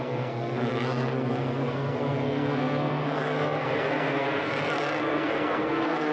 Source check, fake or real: fake